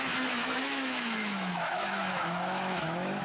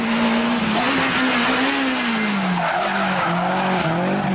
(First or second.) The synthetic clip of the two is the first